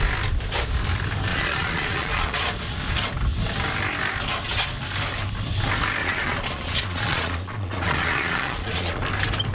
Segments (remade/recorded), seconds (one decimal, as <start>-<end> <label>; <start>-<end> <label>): 0.0-1.3 recorded; 1.3-2.4 remade; 2.4-6.0 recorded; 6.0-9.0 remade; 9.0-9.5 recorded